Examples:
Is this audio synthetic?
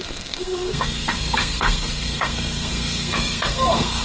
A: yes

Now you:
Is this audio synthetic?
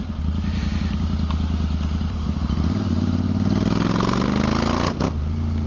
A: no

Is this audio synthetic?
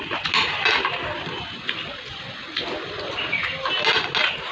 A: no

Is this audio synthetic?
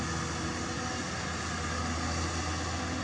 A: no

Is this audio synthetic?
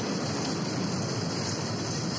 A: no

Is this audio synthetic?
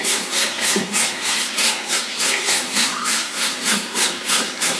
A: yes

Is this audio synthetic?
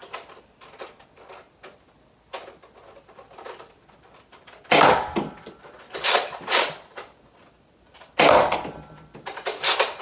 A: no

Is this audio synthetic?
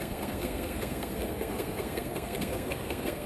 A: yes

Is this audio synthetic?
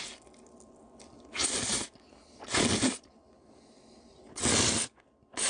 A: no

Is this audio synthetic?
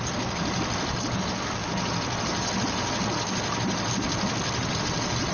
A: no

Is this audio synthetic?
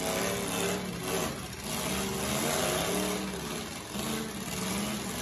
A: no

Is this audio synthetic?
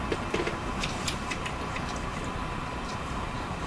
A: yes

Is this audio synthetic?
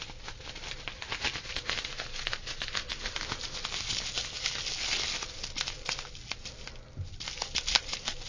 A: no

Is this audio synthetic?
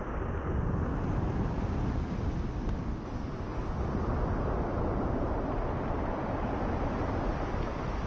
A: no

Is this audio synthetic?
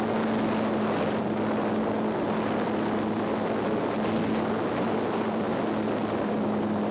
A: no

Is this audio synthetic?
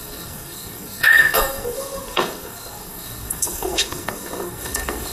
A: yes